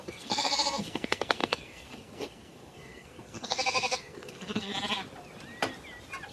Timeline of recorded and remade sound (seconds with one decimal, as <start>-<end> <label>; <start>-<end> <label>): 0.0-4.7 remade; 4.7-6.3 recorded